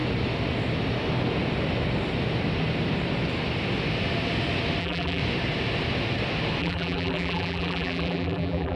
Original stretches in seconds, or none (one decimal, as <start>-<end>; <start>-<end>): 0.0-4.8; 5.2-6.6